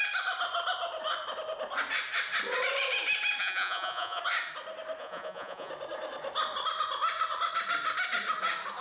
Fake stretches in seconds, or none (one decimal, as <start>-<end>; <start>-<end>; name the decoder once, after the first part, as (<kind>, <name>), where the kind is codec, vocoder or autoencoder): 3.4-4.2 (vocoder, Vocos); 5.0-5.7